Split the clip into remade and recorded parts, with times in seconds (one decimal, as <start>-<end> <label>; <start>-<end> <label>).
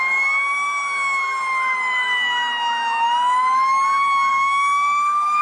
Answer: 0.0-4.3 recorded; 4.3-5.4 remade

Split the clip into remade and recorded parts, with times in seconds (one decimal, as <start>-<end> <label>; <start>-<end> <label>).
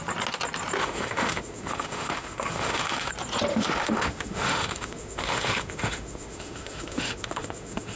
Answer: 0.0-0.8 recorded; 0.8-3.1 remade; 3.1-3.5 recorded; 3.5-8.0 remade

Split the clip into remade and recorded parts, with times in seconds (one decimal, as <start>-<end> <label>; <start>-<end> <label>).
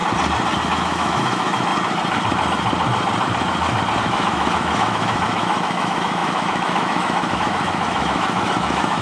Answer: 0.0-0.6 recorded; 0.6-1.7 remade; 1.7-4.0 recorded; 4.0-9.0 remade